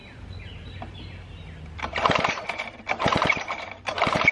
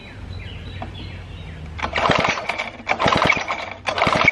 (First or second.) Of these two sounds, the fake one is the first